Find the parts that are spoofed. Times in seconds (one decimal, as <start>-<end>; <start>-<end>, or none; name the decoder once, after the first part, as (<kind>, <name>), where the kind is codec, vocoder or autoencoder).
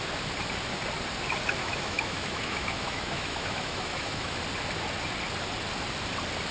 1.6-4.4 (autoencoder, DAC-VAE)